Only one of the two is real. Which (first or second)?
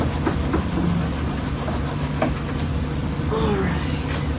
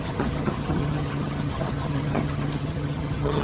first